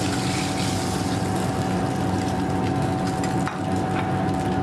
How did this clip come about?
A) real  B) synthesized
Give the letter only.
A